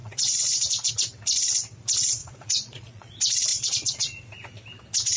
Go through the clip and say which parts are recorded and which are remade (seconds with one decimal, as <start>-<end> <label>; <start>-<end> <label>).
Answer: 0.0-0.9 remade; 0.9-2.2 recorded; 2.2-3.1 remade; 3.1-3.5 recorded; 3.5-4.2 remade; 4.2-5.2 recorded